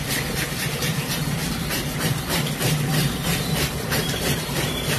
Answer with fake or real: fake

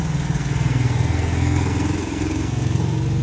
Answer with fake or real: fake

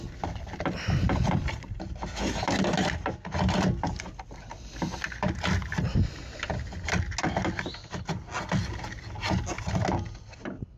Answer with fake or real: real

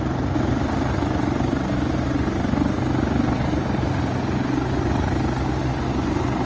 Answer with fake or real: real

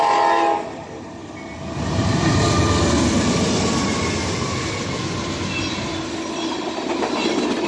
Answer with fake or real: real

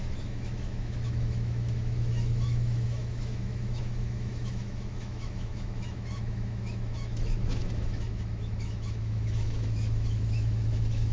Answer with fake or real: fake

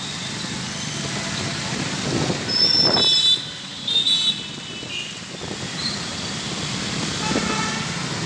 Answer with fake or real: real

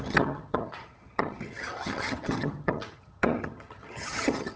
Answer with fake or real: fake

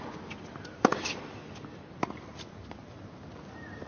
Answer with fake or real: real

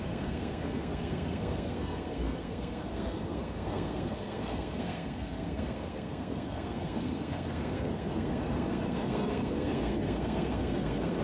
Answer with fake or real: fake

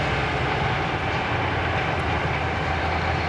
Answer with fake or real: real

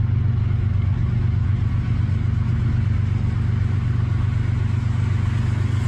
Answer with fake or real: real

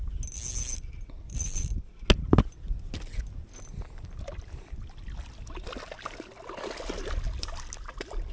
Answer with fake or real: real